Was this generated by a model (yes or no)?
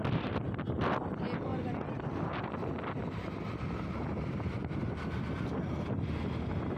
no